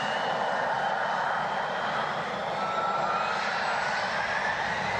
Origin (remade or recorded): recorded